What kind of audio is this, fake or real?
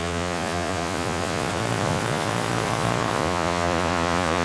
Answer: fake